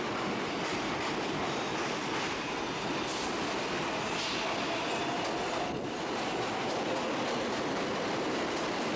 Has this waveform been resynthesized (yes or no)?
no